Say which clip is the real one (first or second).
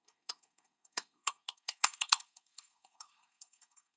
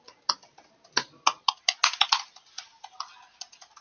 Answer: second